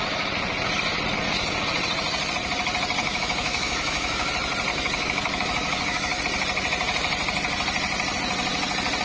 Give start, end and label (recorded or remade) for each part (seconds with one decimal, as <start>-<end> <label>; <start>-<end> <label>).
0.0-3.0 recorded; 3.0-4.3 remade; 4.3-4.7 recorded; 4.7-6.2 remade; 6.2-9.0 recorded